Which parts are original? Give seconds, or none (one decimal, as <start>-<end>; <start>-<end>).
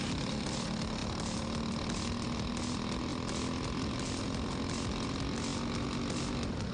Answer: 0.0-6.7